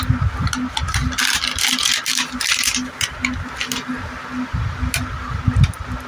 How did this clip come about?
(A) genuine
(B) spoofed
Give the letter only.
A